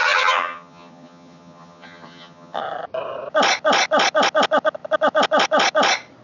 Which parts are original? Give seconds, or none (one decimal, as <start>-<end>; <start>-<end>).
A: 2.6-6.2